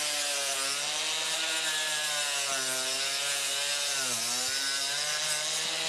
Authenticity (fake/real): real